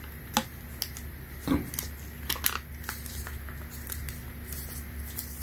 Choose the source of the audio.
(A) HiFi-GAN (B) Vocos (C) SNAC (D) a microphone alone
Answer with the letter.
D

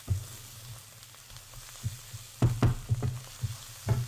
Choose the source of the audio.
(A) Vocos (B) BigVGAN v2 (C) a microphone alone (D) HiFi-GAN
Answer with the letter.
C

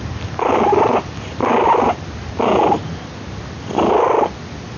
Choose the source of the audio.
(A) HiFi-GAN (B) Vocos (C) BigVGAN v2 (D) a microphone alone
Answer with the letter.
D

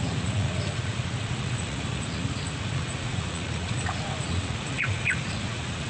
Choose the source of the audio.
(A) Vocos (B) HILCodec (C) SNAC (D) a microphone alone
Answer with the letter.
A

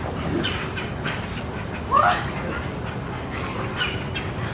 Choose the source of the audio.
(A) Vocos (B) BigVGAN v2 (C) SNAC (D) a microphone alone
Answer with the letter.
D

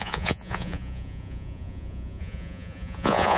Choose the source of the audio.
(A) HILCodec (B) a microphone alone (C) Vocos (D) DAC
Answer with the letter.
C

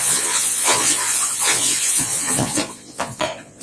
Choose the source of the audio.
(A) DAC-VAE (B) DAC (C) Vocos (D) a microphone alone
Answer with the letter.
C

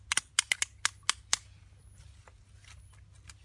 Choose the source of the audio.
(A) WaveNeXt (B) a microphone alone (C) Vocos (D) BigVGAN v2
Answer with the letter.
B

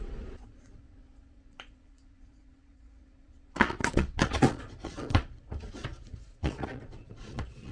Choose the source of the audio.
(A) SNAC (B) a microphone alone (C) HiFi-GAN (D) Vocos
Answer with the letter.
D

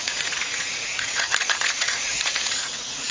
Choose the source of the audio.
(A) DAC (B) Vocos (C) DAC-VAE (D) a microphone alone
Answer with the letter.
B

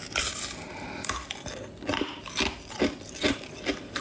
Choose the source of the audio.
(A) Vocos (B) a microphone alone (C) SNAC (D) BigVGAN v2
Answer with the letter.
B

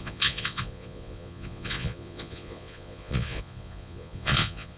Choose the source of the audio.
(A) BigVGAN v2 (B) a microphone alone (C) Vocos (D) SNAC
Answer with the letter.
C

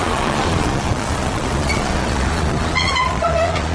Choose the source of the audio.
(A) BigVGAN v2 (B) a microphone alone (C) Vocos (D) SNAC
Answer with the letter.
C